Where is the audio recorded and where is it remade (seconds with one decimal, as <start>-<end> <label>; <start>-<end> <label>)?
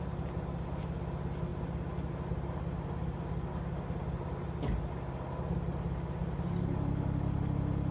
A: 0.0-7.9 recorded